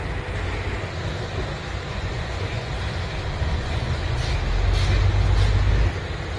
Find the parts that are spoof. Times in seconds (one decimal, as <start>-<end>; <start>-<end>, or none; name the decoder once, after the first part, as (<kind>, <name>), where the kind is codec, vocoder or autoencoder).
1.9-2.7 (vocoder, Vocos); 3.5-4.2